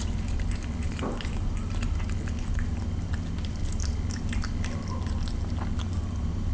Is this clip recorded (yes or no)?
yes